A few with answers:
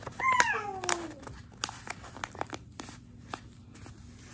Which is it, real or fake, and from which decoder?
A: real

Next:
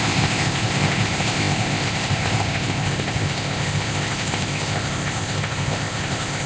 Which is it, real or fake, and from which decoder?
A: fake, codec, ZipCodec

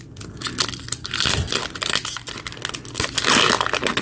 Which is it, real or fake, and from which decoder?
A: real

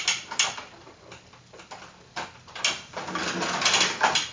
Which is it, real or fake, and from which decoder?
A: real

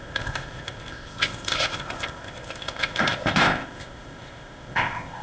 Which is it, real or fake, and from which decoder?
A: fake, codec, ZipCodec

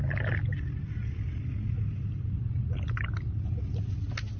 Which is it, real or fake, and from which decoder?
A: real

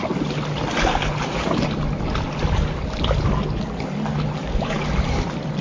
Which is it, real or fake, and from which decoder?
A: real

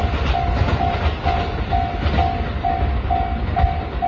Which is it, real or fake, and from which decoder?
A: real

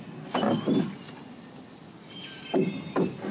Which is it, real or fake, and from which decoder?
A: real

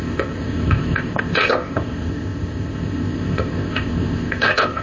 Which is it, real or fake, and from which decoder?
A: fake, codec, ZipCodec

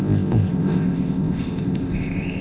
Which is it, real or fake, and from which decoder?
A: fake, codec, ZipCodec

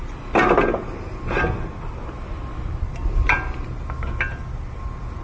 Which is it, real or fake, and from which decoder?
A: real